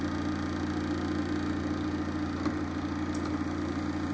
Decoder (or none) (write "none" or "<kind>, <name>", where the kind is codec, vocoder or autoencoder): none